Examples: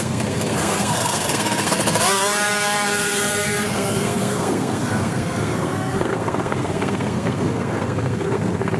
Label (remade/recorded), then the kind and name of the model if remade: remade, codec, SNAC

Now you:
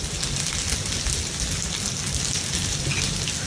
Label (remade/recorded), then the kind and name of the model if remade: recorded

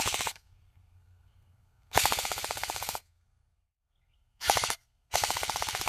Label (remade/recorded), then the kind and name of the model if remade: remade, codec, SNAC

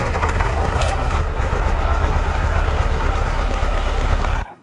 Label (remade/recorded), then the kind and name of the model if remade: remade, codec, SNAC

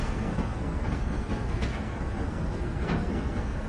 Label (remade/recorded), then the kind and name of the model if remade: remade, codec, SNAC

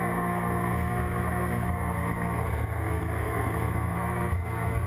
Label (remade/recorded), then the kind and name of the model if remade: remade, codec, SNAC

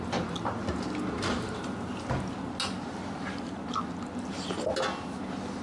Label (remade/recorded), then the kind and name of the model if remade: recorded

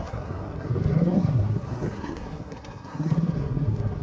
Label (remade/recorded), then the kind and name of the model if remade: remade, codec, SNAC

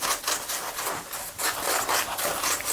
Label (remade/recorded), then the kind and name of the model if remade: recorded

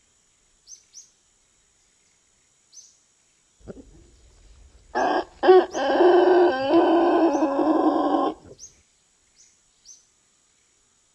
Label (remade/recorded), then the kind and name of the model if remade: recorded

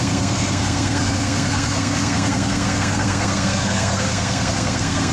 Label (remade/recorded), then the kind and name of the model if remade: remade, codec, SNAC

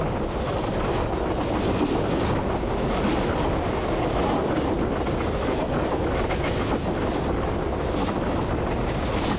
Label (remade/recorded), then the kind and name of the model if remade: recorded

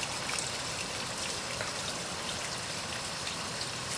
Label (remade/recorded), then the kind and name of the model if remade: recorded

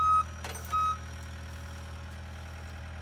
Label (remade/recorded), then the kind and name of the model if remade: recorded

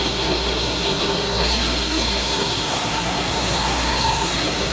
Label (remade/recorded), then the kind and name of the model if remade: remade, codec, SNAC